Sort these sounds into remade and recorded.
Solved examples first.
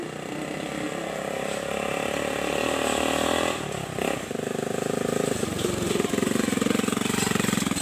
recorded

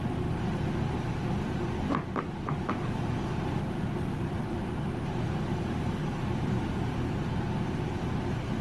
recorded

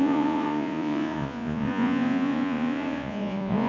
remade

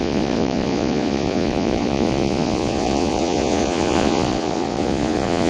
remade